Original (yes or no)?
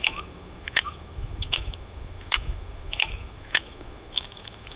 no